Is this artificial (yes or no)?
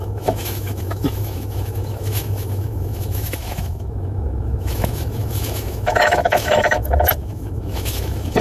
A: yes